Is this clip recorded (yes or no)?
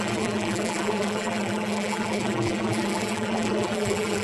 no